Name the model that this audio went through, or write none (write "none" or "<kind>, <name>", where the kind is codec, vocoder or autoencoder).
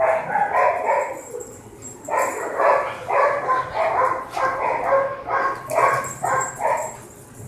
none